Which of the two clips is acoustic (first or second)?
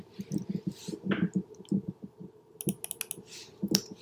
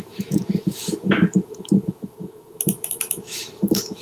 first